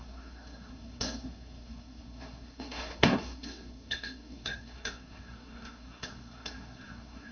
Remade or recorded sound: remade